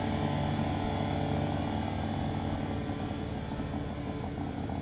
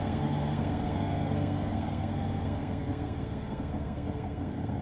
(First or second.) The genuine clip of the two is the first